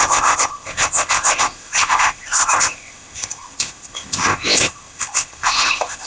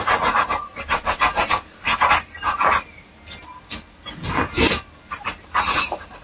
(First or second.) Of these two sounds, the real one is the second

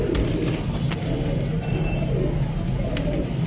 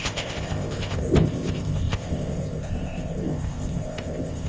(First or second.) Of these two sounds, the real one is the first